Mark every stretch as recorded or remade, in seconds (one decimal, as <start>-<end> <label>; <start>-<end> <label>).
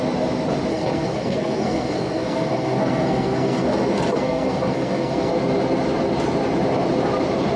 0.0-0.7 recorded; 0.7-5.3 remade; 5.3-7.6 recorded